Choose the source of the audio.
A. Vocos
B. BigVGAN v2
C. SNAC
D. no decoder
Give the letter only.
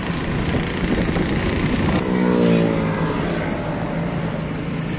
D